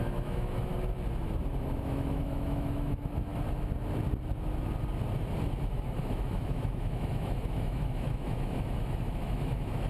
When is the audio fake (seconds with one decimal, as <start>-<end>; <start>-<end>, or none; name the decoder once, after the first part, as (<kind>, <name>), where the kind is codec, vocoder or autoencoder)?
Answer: 0.0-0.7 (autoencoder, DAC-VAE); 1.8-3.3; 5.6-9.9